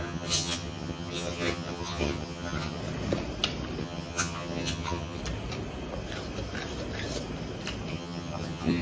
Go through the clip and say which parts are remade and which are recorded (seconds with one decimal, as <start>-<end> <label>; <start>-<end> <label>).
0.0-2.8 remade; 2.8-3.8 recorded; 3.8-5.2 remade; 5.2-7.9 recorded; 7.9-8.8 remade